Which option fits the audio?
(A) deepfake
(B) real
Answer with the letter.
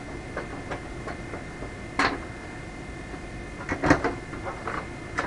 B